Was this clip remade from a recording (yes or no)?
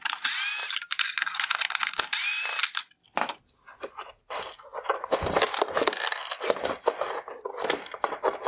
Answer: no